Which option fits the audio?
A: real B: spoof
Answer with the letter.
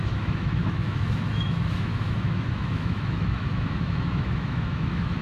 B